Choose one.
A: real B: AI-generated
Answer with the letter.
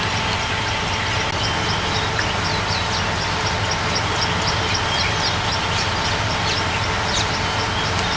A